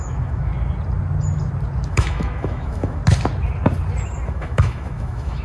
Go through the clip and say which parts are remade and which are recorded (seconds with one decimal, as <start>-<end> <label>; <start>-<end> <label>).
0.0-0.5 remade; 0.5-1.9 recorded; 1.9-3.0 remade; 3.0-4.3 recorded; 4.3-5.4 remade